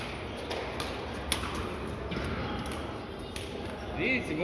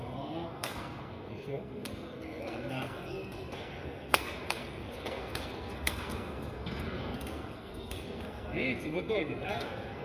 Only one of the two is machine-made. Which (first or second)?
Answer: second